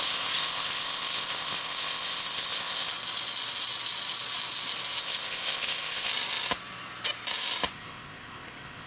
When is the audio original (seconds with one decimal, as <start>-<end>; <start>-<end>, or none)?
2.9-5.0; 6.1-7.7